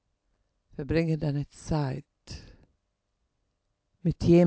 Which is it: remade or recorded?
recorded